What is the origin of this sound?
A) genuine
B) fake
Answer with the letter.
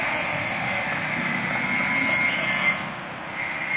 A